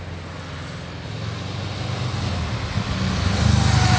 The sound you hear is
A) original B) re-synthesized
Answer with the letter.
A